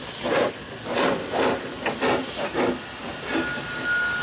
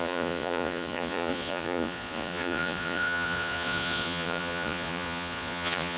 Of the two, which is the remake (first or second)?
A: second